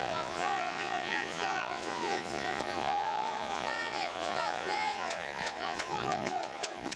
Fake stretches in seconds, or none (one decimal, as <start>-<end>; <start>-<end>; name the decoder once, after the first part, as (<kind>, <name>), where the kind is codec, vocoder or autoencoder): 0.0-7.0 (vocoder, Vocos)